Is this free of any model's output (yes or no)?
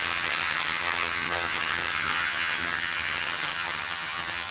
no